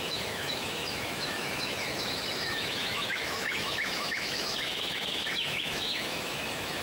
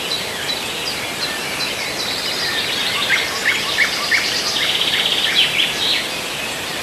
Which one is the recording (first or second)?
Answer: second